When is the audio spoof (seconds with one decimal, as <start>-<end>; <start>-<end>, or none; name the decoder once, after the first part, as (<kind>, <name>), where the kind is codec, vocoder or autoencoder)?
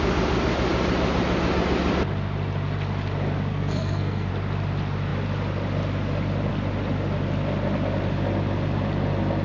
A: 3.5-4.3 (codec, SNAC)